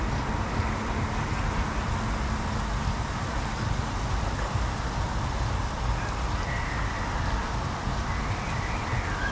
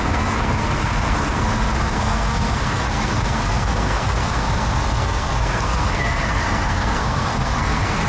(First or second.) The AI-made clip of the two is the second